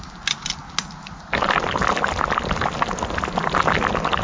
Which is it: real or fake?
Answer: real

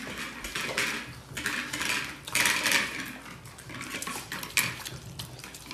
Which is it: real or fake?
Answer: real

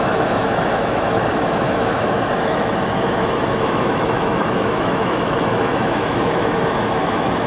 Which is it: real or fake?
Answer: fake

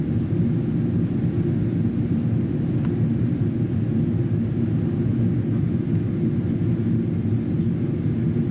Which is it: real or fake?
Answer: real